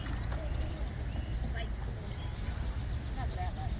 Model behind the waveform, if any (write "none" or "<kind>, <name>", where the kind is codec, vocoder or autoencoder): none